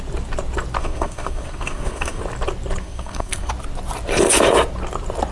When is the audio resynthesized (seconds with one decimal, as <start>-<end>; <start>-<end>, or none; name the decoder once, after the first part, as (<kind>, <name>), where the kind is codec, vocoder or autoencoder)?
0.8-2.2 (codec, SNAC); 2.8-3.5